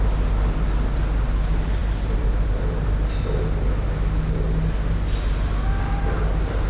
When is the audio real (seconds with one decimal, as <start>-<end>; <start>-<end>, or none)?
0.0-6.7